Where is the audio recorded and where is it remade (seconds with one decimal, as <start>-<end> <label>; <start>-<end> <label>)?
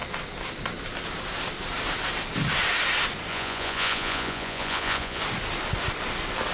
0.0-3.3 recorded; 3.3-5.2 remade; 5.2-6.5 recorded